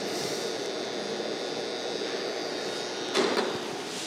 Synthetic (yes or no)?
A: no